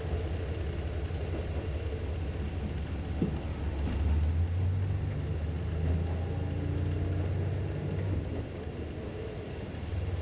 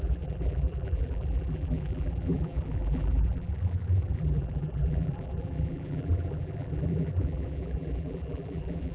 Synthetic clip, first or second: second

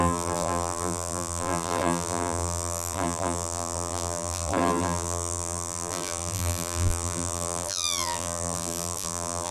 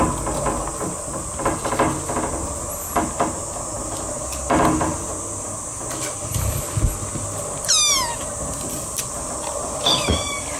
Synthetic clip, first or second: first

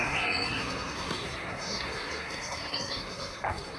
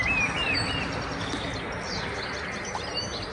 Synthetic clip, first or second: first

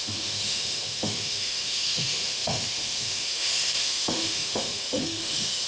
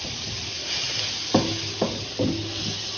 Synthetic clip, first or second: first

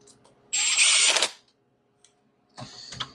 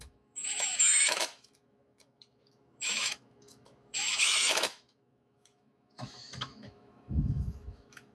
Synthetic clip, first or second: second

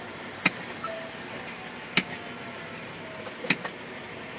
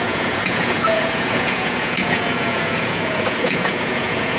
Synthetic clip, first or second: second